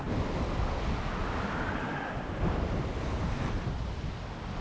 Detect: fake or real real